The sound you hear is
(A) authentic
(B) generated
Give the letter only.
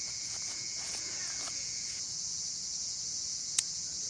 B